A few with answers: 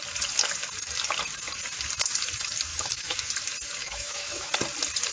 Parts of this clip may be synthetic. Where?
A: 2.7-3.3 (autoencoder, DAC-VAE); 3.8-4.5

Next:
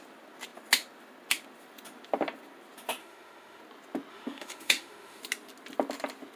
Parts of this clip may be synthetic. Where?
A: 3.0-3.6 (autoencoder, DAC-VAE); 4.1-5.2